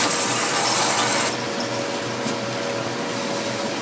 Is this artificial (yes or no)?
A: no